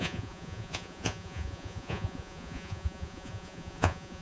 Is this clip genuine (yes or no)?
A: no